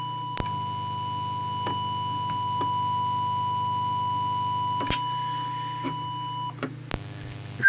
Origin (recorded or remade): recorded